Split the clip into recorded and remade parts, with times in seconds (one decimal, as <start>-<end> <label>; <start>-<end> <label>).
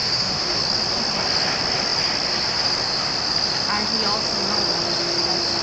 0.0-0.6 remade; 0.6-5.6 recorded